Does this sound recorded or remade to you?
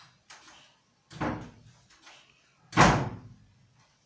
recorded